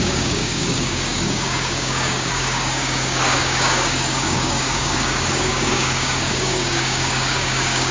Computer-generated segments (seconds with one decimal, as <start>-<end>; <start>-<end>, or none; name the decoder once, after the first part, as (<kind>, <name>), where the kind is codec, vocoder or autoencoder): 0.0-7.9 (codec, DAC)